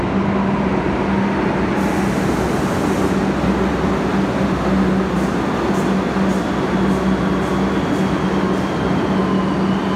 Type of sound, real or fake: real